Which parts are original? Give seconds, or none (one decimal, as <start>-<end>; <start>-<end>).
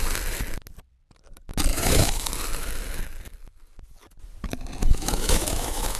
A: 0.0-1.7; 2.3-4.8